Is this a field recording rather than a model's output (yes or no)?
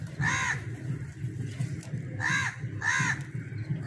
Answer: yes